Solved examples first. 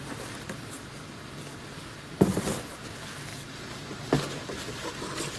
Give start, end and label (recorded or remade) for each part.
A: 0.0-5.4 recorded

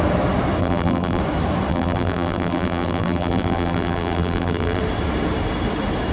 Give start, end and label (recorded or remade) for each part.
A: 0.0-0.6 recorded; 0.6-1.2 remade; 1.2-1.7 recorded; 1.7-4.8 remade; 4.8-6.1 recorded

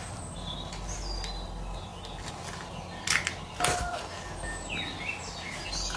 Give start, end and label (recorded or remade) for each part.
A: 0.0-6.0 recorded

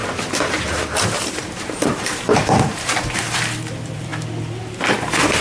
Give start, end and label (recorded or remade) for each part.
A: 0.0-4.1 remade; 4.1-4.9 recorded; 4.9-5.4 remade

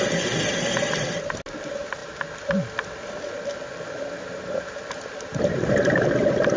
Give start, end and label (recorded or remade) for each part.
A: 0.0-6.6 recorded